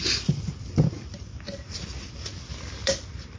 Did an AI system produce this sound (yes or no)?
no